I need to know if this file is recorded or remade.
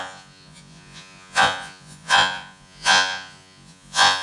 remade